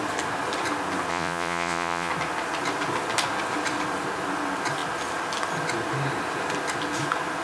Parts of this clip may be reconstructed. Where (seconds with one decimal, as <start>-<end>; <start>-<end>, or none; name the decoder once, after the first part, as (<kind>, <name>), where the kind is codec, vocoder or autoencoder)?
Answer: 1.1-2.1 (vocoder, Vocos)